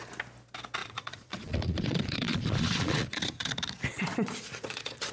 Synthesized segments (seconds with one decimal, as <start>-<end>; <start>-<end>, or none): 0.8-3.5; 3.9-5.1